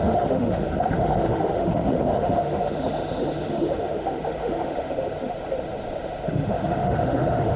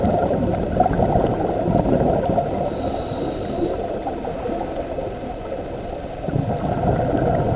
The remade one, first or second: first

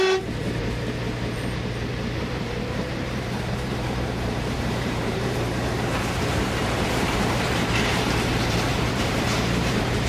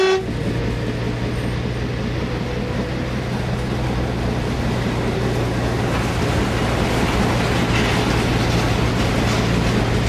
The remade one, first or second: first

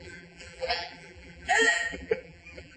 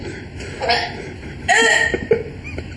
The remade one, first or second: first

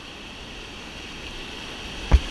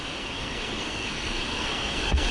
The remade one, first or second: second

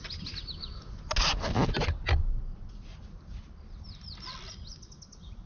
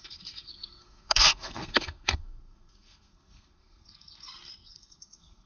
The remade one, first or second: second